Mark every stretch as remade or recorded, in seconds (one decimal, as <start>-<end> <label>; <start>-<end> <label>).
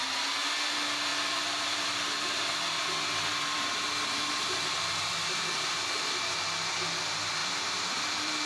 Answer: 0.0-1.1 recorded; 1.1-4.3 remade; 4.3-7.4 recorded; 7.4-8.5 remade